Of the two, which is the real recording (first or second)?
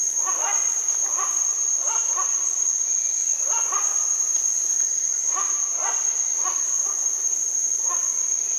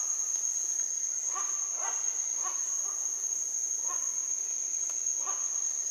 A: second